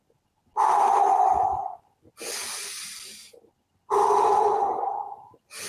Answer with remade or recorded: recorded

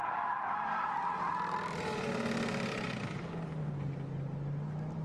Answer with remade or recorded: recorded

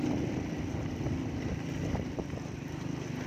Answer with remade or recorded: recorded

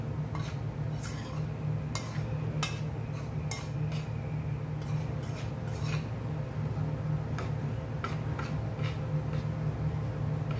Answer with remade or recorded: recorded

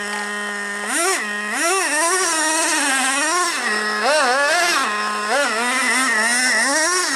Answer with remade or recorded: recorded